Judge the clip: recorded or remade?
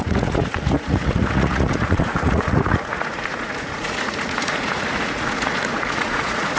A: remade